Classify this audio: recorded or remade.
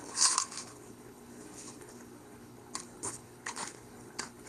remade